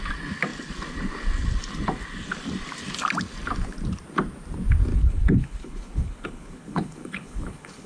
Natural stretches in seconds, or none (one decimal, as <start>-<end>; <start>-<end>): 0.0-4.9